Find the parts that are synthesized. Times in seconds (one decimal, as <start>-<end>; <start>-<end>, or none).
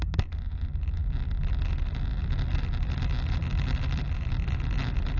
none